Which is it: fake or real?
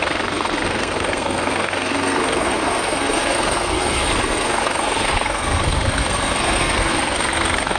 fake